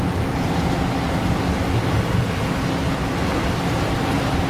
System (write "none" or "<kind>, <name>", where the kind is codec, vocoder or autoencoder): none